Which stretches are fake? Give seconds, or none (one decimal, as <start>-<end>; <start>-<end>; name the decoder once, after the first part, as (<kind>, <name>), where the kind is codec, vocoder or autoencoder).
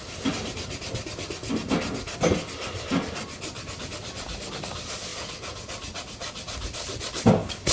none